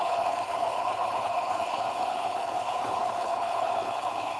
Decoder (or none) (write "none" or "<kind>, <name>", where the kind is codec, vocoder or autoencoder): codec, HILCodec